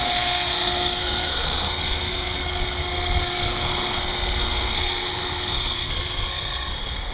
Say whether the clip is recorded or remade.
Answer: remade